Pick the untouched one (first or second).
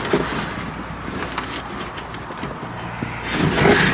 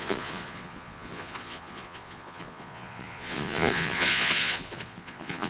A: first